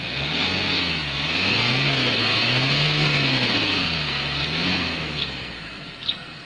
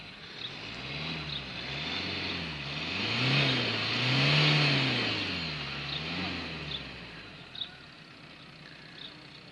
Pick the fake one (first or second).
first